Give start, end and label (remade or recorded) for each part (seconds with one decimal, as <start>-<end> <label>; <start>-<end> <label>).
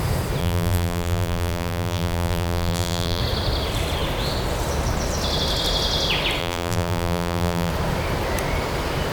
0.0-0.4 recorded; 0.4-3.2 remade; 3.2-6.4 recorded; 6.4-7.7 remade; 7.7-9.1 recorded